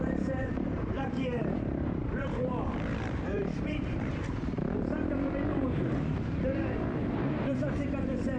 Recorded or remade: remade